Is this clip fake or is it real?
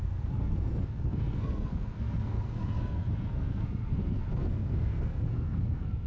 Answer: fake